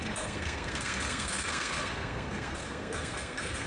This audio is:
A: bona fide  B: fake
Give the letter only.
B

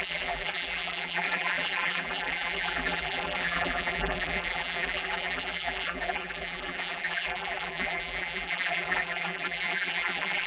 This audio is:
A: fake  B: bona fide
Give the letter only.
A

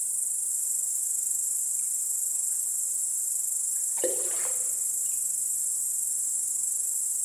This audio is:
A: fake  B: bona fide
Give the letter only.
B